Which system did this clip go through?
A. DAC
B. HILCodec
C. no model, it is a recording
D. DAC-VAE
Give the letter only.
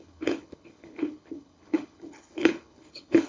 B